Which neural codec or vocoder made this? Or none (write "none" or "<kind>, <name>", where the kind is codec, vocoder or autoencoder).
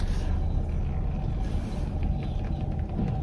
none